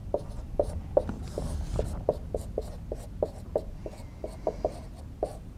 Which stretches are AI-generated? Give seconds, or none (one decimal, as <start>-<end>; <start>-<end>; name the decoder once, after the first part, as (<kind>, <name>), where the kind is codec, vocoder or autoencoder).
none